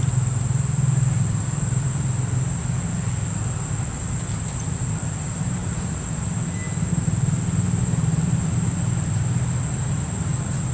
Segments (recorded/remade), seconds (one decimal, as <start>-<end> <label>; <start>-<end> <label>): 0.0-5.6 recorded; 5.6-6.2 remade; 6.2-10.7 recorded